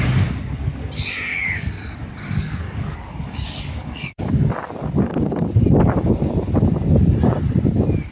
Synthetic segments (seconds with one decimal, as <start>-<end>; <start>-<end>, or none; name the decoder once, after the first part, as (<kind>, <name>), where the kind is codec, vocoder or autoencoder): 1.3-4.5 (codec, DAC)